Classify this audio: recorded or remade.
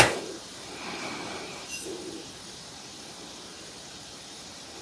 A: remade